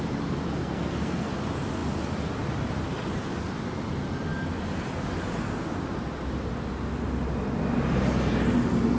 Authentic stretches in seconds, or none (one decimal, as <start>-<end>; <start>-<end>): 0.0-0.6; 1.3-9.0